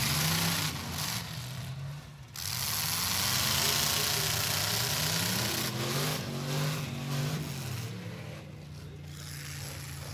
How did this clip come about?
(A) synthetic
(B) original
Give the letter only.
B